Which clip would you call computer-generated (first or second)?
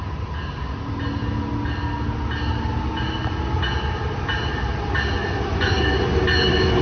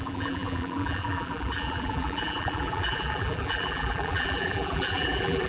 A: second